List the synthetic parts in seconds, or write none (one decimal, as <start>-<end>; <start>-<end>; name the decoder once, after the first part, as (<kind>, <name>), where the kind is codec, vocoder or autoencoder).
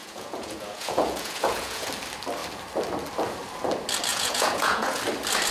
0.0-1.9 (vocoder, Vocos); 4.1-5.0